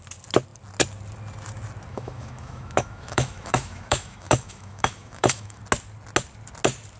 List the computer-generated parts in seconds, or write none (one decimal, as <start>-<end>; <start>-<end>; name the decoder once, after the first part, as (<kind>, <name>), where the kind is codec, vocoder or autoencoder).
1.9-5.6 (autoencoder, DAC-VAE)